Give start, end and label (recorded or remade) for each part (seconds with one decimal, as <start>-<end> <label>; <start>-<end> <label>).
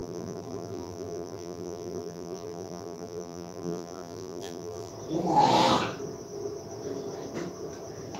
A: 0.0-4.9 remade; 4.9-8.2 recorded